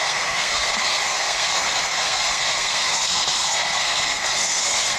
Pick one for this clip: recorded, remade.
remade